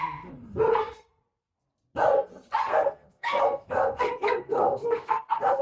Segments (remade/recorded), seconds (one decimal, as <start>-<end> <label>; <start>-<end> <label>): 0.0-0.7 recorded; 0.7-1.2 remade; 1.2-2.6 recorded; 2.6-5.6 remade